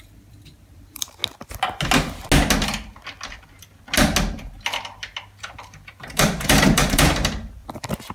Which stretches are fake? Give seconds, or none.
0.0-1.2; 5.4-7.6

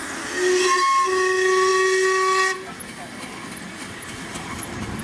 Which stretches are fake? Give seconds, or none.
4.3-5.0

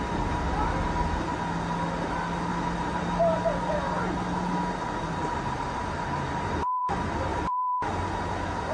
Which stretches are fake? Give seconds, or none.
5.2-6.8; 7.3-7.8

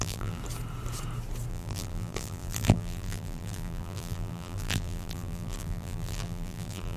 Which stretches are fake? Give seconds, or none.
0.0-0.4; 1.5-7.0

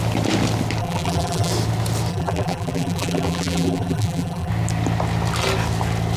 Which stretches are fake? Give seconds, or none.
0.8-1.5; 2.1-4.5

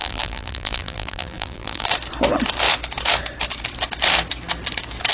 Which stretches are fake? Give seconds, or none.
0.0-1.9

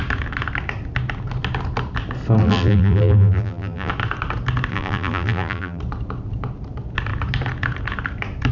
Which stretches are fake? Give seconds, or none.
2.4-3.9; 4.7-5.8